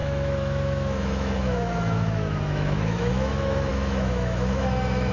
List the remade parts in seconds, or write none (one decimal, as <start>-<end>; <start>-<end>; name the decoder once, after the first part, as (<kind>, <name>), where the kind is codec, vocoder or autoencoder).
0.0-5.1 (autoencoder, DAC-VAE)